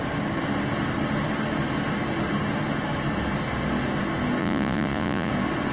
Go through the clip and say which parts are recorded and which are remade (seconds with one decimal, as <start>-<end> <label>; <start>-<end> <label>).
0.0-4.4 recorded; 4.4-5.3 remade; 5.3-5.7 recorded